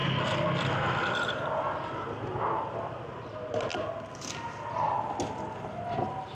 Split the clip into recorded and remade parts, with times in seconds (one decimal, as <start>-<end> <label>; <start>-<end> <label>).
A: 0.0-6.3 recorded